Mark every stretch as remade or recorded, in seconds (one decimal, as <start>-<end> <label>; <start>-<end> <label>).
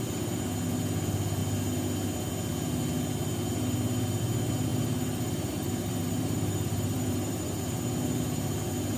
0.0-4.7 recorded; 4.7-7.6 remade; 7.6-9.0 recorded